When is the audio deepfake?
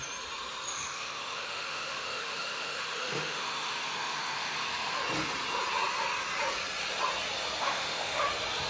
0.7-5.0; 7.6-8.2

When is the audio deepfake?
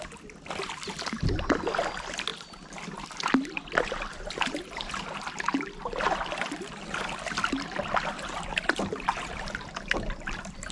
none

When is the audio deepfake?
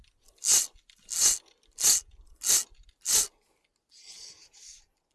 none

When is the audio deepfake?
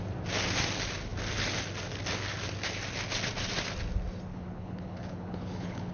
4.3-5.9